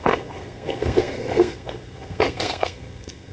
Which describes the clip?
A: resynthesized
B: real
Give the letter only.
A